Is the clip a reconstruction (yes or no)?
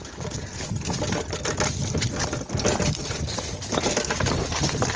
no